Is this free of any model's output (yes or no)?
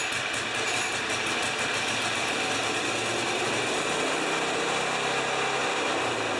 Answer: yes